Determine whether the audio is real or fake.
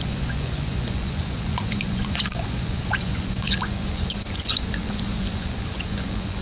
fake